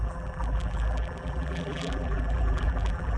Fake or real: fake